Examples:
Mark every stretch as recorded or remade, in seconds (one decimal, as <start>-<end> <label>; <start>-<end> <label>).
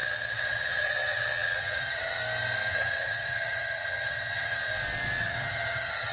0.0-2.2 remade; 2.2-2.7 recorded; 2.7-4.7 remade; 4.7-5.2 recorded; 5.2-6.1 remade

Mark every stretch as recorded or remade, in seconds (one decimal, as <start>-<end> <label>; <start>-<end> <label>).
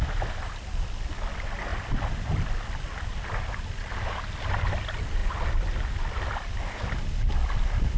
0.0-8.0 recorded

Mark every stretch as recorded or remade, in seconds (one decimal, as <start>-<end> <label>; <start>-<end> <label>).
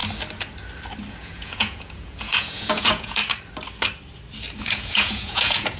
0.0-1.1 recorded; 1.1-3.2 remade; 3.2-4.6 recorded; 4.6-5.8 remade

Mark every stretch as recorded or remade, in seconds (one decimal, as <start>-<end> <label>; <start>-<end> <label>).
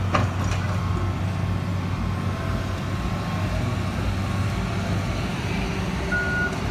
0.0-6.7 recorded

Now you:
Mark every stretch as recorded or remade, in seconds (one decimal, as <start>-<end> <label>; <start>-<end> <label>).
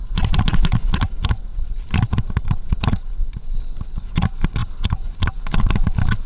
0.0-0.9 remade; 0.9-1.5 recorded; 1.5-3.6 remade; 3.6-4.6 recorded; 4.6-5.3 remade; 5.3-6.3 recorded